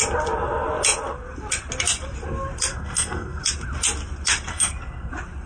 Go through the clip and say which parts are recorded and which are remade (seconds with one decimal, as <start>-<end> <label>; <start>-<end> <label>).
0.0-2.7 recorded; 2.7-3.4 remade; 3.4-4.5 recorded; 4.5-5.1 remade; 5.1-5.5 recorded